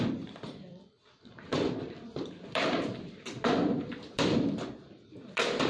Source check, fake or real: fake